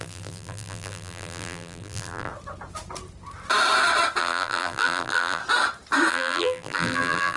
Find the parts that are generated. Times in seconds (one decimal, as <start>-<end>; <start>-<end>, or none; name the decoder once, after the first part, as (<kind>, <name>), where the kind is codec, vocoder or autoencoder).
0.0-2.3 (vocoder, BigVGAN v2); 4.2-5.4; 6.1-7.4